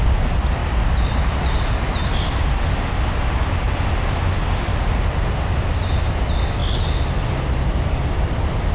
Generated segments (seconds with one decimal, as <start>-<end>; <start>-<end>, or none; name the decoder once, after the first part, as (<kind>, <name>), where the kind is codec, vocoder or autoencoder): none